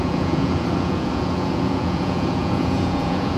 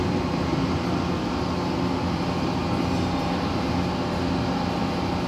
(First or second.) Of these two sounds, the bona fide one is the second